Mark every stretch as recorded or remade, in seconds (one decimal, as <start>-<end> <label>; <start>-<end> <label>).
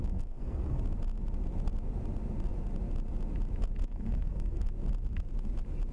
0.0-0.8 remade; 0.8-3.8 recorded; 3.8-4.7 remade; 4.7-5.9 recorded